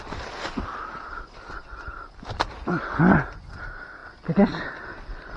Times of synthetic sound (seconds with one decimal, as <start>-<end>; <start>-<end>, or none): none